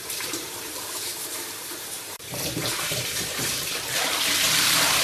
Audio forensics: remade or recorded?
remade